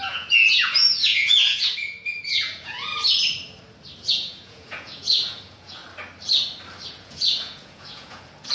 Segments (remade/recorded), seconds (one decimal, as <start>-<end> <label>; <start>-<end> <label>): 0.0-2.9 remade; 2.9-4.1 recorded; 4.1-5.8 remade; 5.8-6.9 recorded; 6.9-8.5 remade